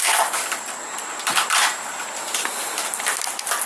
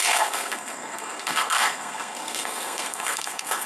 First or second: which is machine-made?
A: second